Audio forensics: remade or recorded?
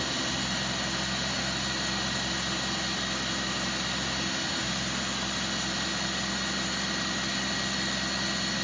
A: recorded